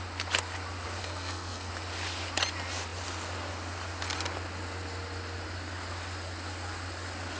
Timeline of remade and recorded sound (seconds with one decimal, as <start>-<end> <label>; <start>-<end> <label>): 0.0-1.0 recorded; 1.0-1.7 remade; 1.7-7.4 recorded